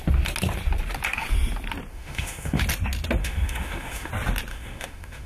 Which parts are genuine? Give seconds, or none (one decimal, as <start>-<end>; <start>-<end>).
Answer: 0.0-1.9; 2.6-3.2; 4.1-4.5